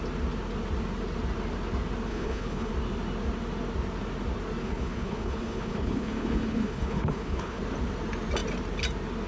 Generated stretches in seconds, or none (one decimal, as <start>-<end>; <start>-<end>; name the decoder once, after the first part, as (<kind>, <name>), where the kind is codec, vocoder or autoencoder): 2.1-2.7 (codec, HILCodec); 4.6-7.6